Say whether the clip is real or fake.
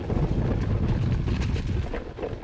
real